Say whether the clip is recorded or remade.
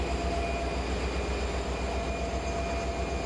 recorded